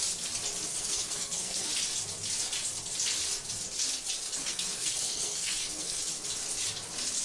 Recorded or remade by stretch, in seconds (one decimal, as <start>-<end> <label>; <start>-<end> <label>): 0.0-0.7 recorded; 0.7-1.7 remade; 1.7-4.4 recorded; 4.4-6.0 remade; 6.0-7.2 recorded